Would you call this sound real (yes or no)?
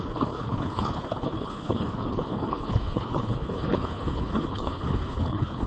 no